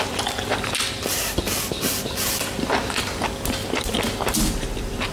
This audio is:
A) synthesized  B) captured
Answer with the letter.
B